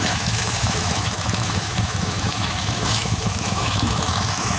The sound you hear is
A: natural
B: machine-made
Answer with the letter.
B